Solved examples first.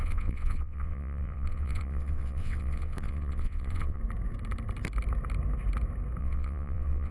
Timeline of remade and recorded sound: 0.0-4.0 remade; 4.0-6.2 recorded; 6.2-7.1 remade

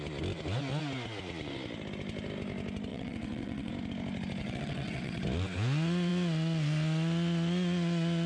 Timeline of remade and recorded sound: 0.0-2.9 recorded; 2.9-3.7 remade; 3.7-4.4 recorded; 4.4-5.2 remade; 5.2-8.3 recorded

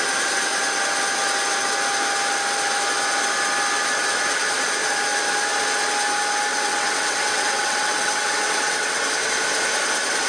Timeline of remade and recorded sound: 0.0-6.5 recorded; 6.5-9.1 remade; 9.1-10.3 recorded

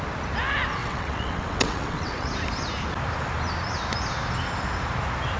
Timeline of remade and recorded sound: 0.0-0.8 recorded; 0.8-2.3 remade; 2.3-5.4 recorded

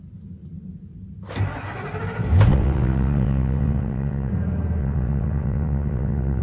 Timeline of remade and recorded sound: 0.0-2.5 recorded; 2.5-4.3 remade; 4.3-4.8 recorded; 4.8-6.4 remade